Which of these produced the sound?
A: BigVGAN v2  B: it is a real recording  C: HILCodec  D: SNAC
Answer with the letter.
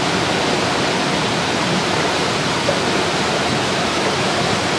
B